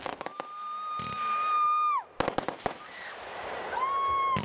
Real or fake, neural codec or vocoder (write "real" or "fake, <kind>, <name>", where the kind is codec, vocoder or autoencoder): real